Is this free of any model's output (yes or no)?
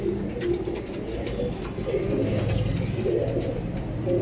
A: yes